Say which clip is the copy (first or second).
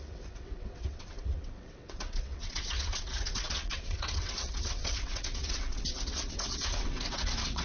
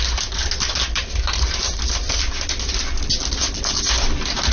first